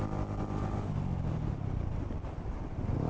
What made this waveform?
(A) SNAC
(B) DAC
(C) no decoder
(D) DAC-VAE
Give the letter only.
C